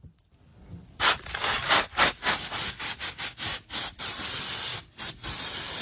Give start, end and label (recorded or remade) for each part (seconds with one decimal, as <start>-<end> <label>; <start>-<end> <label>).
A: 0.0-5.8 recorded

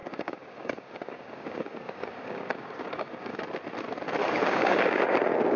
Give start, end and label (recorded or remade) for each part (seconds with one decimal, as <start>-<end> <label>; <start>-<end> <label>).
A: 0.0-3.4 remade; 3.4-4.2 recorded; 4.2-5.0 remade; 5.0-5.6 recorded

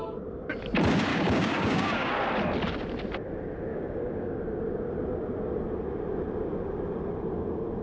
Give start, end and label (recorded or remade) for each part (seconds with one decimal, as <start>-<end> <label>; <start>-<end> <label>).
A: 0.0-1.1 recorded; 1.1-2.1 remade; 2.1-3.7 recorded; 3.7-4.4 remade; 4.4-7.8 recorded

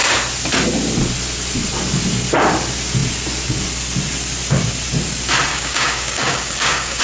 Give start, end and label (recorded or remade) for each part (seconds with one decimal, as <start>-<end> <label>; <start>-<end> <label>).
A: 0.0-5.5 recorded; 5.5-7.0 remade

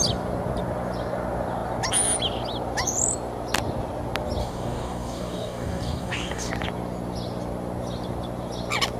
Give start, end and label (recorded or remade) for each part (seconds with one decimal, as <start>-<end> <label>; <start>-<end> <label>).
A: 0.0-4.4 recorded; 4.4-6.5 remade; 6.5-9.0 recorded

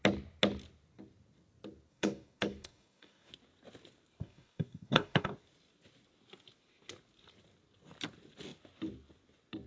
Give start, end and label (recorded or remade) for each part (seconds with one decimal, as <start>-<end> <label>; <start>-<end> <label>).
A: 0.0-1.9 recorded; 1.9-3.3 remade; 3.3-4.2 recorded; 4.2-5.3 remade; 5.3-9.7 recorded

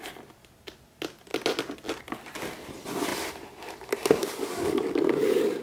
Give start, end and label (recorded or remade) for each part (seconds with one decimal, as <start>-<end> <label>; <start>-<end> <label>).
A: 0.0-4.2 recorded; 4.2-5.6 remade

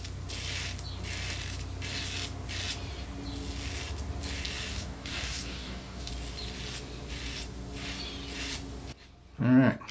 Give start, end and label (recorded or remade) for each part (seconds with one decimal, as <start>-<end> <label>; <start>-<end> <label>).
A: 0.0-4.7 recorded; 4.7-6.1 remade; 6.1-9.9 recorded